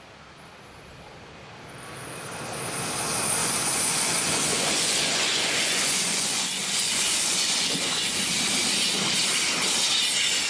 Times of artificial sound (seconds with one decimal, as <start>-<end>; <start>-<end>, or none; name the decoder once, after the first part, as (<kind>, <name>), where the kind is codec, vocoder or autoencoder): 3.4-8.3 (vocoder, Vocos)